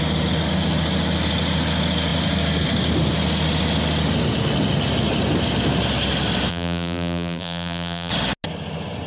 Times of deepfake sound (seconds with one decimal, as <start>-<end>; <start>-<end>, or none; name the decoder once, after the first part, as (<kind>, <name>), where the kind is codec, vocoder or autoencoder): 6.5-8.1 (vocoder, BigVGAN v2)